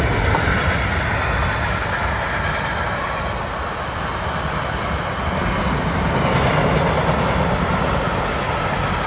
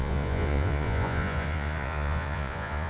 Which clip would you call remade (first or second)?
second